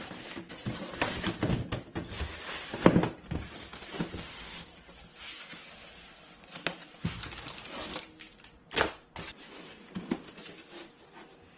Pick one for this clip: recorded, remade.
recorded